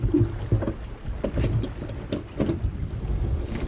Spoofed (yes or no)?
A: no